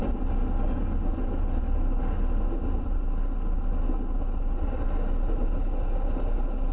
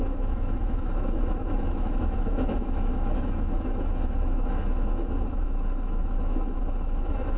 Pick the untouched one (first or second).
first